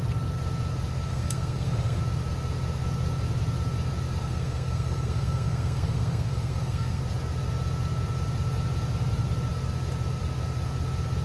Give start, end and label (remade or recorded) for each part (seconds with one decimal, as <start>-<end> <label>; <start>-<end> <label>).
0.0-1.1 recorded; 1.1-2.0 remade; 2.0-4.2 recorded; 4.2-7.0 remade; 7.0-11.2 recorded